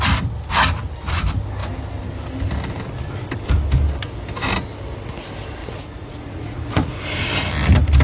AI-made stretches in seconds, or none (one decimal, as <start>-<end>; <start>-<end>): 5.6-6.9